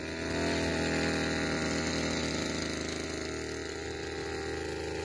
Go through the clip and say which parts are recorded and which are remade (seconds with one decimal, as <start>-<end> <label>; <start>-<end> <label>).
0.0-5.0 recorded